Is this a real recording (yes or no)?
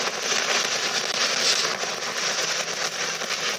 yes